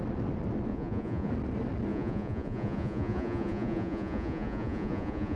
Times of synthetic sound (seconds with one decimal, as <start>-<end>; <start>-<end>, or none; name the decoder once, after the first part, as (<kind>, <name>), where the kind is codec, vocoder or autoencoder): 0.7-1.3 (vocoder, Vocos); 1.9-5.4